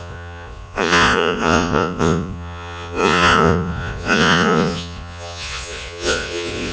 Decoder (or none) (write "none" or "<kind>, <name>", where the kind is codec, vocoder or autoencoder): vocoder, Vocos